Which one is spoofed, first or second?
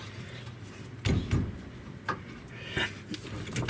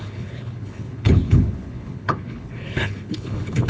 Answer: second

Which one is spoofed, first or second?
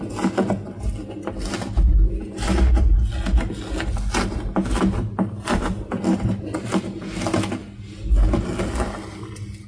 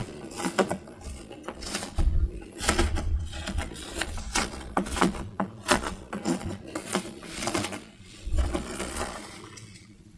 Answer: second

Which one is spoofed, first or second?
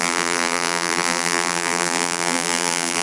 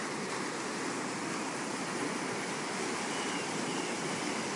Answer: first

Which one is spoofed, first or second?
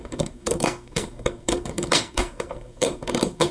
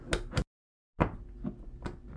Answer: first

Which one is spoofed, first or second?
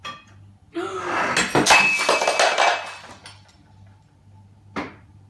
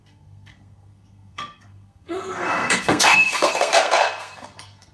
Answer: second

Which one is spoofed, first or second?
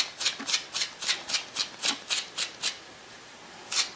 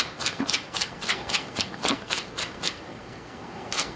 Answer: second